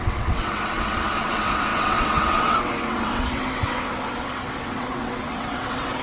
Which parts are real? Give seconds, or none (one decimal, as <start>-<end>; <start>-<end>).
none